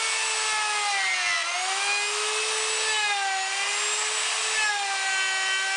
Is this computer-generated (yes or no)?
no